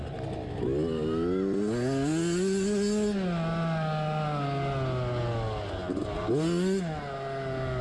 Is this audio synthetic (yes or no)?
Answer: no